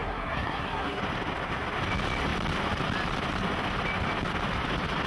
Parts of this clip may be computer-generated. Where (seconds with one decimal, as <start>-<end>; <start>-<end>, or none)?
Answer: 0.0-1.0